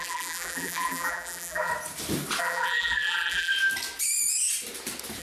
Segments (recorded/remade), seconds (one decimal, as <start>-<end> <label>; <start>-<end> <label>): 0.0-1.7 remade; 1.7-2.4 recorded; 2.4-3.5 remade; 3.5-5.2 recorded